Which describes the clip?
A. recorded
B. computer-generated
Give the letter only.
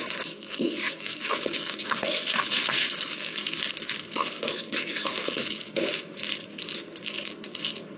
B